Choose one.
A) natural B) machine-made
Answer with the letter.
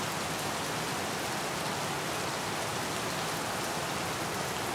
A